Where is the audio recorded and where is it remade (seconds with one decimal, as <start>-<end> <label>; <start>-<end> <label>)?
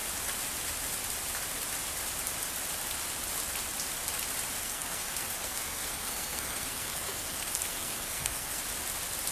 0.0-4.6 recorded; 4.6-8.6 remade; 8.6-9.3 recorded